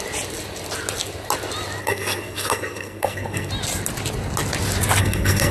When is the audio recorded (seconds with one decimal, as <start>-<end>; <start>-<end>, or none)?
0.0-1.8; 3.5-5.0